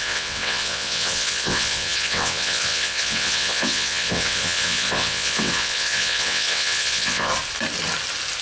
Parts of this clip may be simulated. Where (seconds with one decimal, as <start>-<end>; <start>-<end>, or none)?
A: 0.0-7.3